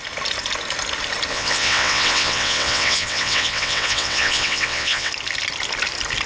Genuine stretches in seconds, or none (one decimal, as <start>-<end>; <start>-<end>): 0.0-1.3; 5.1-6.3